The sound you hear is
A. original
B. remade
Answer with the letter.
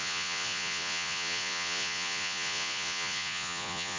B